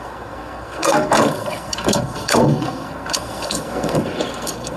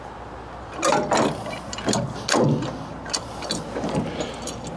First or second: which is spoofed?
first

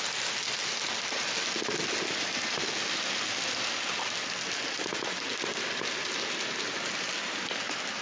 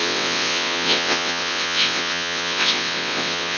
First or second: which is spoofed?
second